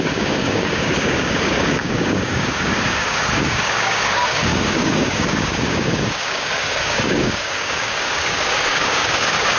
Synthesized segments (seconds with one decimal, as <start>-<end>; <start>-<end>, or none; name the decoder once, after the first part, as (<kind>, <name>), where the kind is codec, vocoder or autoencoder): 0.0-9.6 (codec, DAC)